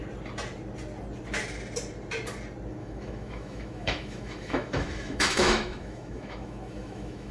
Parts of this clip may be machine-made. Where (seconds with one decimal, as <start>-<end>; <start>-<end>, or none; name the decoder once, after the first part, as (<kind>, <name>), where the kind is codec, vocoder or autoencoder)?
2.8-7.3 (autoencoder, DAC-VAE)